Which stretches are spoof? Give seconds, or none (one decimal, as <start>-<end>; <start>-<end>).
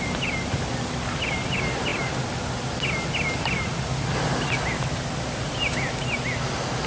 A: none